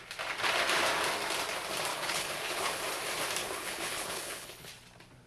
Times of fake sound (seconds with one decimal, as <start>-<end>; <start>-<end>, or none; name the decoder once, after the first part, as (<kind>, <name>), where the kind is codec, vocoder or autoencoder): 1.9-2.7 (codec, HILCodec); 3.4-4.7